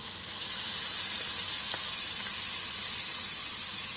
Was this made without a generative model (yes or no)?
yes